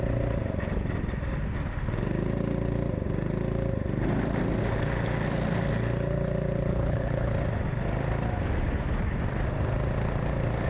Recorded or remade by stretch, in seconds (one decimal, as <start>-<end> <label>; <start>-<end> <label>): 0.0-6.7 recorded; 6.7-7.3 remade; 7.3-10.7 recorded